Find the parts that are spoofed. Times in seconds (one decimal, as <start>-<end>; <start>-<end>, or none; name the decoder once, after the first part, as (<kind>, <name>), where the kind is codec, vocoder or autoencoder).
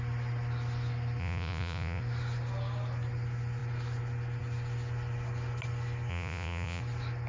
1.2-2.0 (vocoder, Vocos); 6.1-6.8